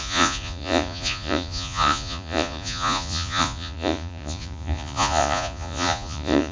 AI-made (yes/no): yes